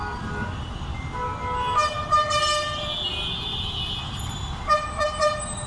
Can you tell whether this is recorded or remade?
recorded